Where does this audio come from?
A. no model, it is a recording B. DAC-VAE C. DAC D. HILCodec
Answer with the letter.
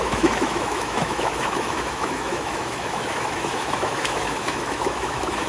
B